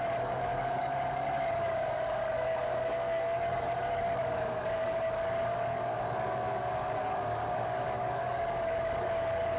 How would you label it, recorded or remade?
remade